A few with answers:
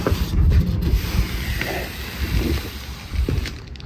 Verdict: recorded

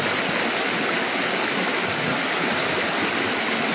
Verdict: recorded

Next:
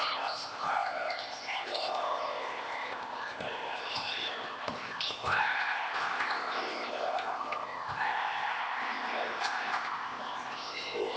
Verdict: remade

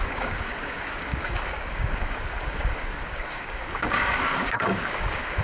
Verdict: remade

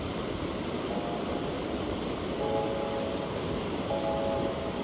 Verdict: recorded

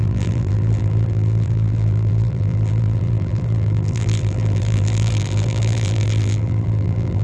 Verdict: remade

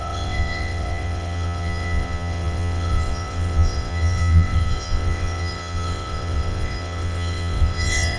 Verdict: remade